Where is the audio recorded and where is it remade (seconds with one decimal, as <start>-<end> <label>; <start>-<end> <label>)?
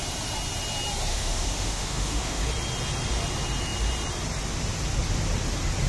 0.0-1.1 recorded; 1.1-2.4 remade; 2.4-5.9 recorded